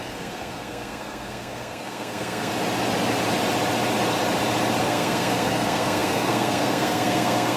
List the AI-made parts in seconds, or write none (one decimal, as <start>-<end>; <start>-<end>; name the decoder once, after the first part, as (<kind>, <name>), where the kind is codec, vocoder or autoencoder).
0.0-2.5 (codec, SNAC); 4.8-7.6